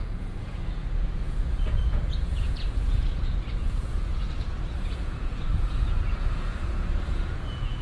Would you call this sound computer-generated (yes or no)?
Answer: yes